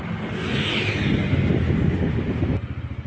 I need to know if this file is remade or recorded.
recorded